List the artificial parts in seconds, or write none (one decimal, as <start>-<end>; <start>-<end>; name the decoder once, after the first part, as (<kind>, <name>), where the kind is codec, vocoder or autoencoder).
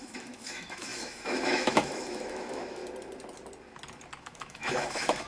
0.0-2.8 (autoencoder, DAC-VAE); 4.2-5.3